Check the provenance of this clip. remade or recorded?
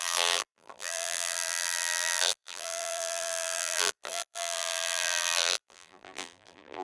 remade